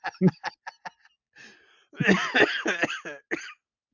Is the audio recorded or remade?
recorded